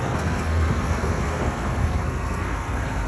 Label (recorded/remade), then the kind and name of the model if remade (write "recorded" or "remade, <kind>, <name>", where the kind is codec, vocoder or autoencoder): remade, codec, SNAC